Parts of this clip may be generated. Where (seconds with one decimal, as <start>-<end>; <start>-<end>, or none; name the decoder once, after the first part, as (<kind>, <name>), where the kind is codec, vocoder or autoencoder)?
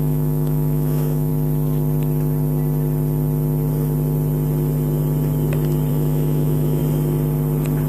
0.0-1.3 (autoencoder, DAC-VAE); 5.9-6.8